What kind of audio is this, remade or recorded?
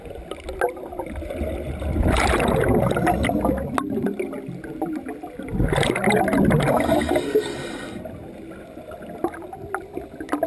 recorded